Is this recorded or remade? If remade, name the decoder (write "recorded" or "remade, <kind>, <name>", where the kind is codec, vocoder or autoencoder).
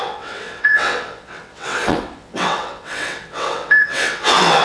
remade, vocoder, WaveNeXt